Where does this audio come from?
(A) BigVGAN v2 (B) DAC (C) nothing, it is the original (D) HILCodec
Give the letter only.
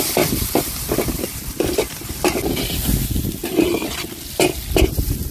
C